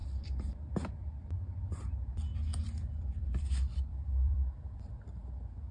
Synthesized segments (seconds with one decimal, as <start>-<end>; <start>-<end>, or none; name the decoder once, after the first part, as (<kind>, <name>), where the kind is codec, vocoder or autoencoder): 0.0-0.7 (vocoder, BigVGAN v2); 2.3-4.8